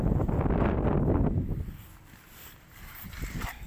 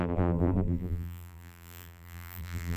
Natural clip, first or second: first